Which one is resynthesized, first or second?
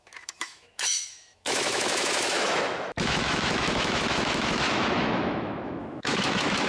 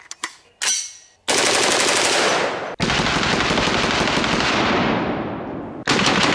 first